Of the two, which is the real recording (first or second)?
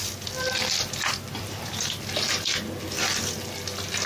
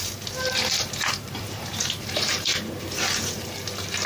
first